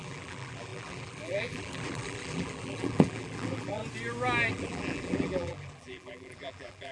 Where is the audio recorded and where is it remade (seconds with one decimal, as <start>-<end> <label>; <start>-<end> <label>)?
0.0-3.8 remade; 3.8-4.5 recorded; 4.5-6.9 remade